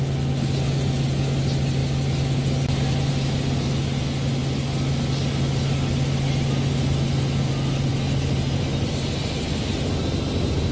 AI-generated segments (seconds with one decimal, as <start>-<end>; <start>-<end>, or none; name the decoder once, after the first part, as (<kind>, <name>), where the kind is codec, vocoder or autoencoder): none